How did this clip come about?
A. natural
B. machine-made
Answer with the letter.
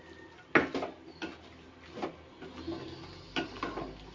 A